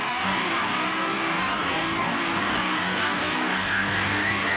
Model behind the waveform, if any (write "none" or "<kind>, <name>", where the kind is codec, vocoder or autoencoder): codec, DAC